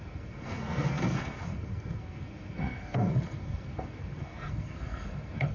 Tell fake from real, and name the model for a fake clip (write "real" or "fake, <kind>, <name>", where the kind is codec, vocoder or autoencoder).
fake, codec, SNAC